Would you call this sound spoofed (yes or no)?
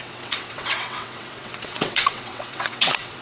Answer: yes